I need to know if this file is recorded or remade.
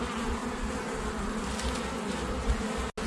recorded